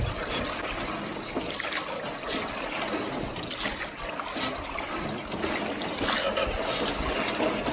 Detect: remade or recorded recorded